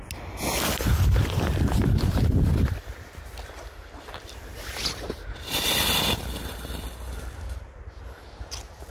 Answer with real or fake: real